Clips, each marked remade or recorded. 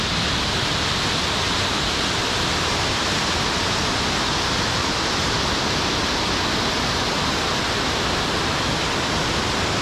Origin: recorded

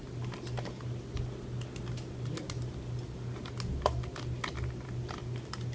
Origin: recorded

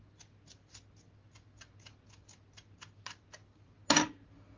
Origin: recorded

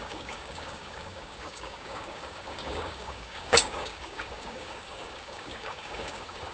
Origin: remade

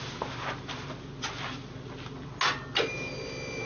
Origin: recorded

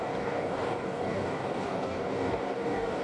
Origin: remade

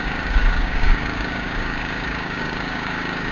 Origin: remade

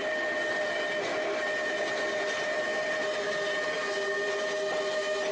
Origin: recorded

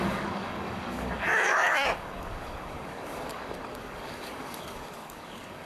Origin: remade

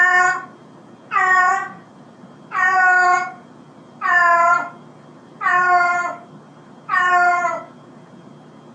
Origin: recorded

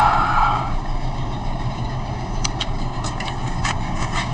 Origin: remade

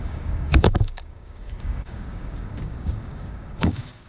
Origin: remade